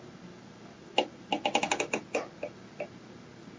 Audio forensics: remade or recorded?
recorded